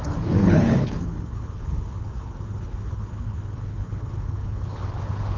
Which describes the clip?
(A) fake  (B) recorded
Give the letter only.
A